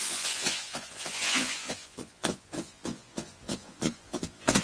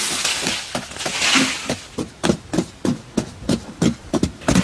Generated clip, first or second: first